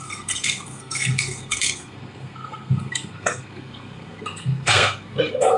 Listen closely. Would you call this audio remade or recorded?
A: remade